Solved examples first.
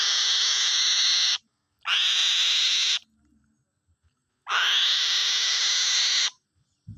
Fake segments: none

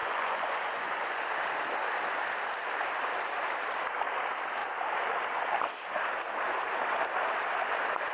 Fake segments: 0.0-1.2 (vocoder, Vocos)